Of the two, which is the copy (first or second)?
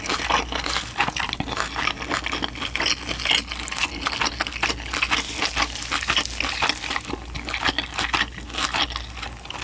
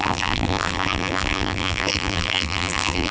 second